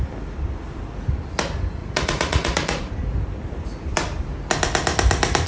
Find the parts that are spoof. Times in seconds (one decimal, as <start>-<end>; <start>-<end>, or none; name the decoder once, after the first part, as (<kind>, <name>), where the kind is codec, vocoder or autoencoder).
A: 1.8-2.9 (vocoder, Vocos)

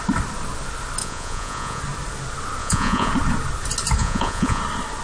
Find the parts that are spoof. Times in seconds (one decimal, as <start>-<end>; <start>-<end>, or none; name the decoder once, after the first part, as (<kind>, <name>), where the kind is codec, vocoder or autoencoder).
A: 1.0-1.8 (vocoder, Vocos); 2.6-3.1; 4.0-4.6

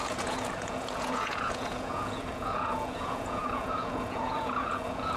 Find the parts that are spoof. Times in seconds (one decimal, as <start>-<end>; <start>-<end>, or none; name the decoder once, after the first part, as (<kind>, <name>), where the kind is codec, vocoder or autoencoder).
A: 0.0-5.2 (vocoder, Vocos)

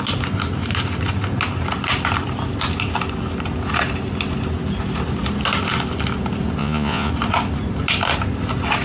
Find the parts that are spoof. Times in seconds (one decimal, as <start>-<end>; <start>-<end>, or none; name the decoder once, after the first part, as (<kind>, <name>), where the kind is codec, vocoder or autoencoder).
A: 6.6-7.1 (vocoder, Vocos)

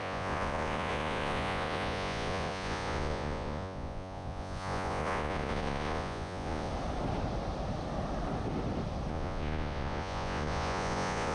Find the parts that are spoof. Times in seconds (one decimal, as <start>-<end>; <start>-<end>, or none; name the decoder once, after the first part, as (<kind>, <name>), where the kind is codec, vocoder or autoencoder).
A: 0.0-6.7 (vocoder, Vocos); 9.1-11.3

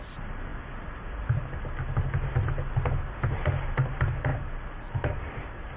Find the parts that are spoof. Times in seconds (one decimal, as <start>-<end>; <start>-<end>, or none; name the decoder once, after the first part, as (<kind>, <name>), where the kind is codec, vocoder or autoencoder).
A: none